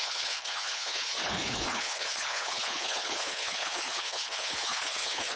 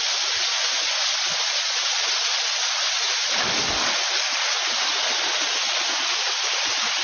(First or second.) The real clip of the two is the second